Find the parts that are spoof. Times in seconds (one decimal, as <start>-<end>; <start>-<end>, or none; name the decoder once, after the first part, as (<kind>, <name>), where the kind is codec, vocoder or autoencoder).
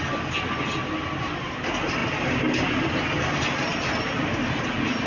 none